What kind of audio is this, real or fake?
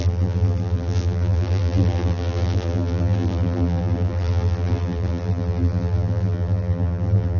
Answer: fake